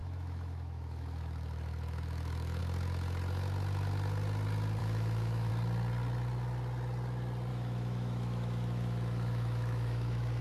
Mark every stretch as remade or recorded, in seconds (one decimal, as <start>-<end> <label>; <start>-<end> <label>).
0.0-2.6 remade; 2.6-4.8 recorded; 4.8-5.5 remade; 5.5-7.5 recorded; 7.5-10.4 remade

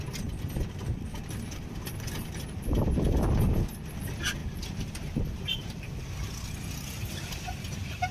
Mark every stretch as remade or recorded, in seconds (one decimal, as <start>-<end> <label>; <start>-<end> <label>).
0.0-1.1 recorded; 1.1-1.9 remade; 1.9-4.4 recorded; 4.4-7.1 remade; 7.1-8.1 recorded

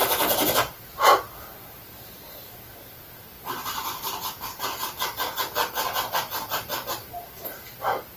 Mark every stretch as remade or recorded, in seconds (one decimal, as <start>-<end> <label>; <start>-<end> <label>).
0.0-8.2 recorded

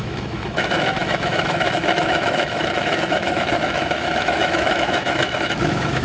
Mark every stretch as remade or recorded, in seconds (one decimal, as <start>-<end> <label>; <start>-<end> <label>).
0.0-6.0 remade

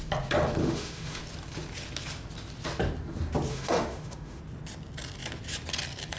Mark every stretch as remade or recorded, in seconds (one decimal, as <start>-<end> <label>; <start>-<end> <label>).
0.0-0.6 recorded; 0.6-1.2 remade; 1.2-3.5 recorded; 3.5-4.4 remade; 4.4-6.2 recorded

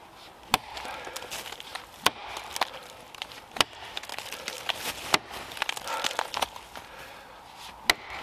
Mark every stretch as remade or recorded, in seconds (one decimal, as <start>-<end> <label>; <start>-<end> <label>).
0.0-8.2 recorded

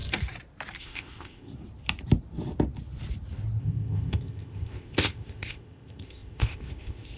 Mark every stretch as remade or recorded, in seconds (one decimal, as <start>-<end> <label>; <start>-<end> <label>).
0.0-0.8 recorded; 0.8-1.5 remade; 1.5-3.6 recorded; 3.6-7.2 remade